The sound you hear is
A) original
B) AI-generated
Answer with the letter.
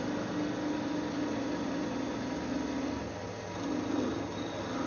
A